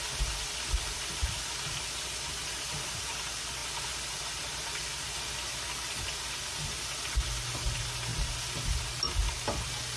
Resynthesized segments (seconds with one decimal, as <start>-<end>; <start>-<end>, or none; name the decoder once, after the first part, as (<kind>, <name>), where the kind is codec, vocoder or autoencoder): none